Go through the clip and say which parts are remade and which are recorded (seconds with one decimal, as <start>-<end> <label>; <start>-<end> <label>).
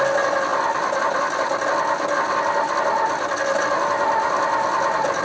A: 0.0-5.2 recorded